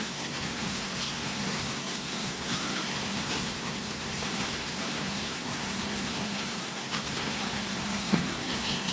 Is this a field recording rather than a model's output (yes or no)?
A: no